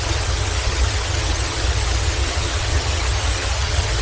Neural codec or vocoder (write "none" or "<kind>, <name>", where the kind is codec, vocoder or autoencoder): vocoder, HiFi-GAN